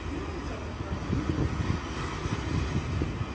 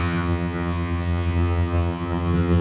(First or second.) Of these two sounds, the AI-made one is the second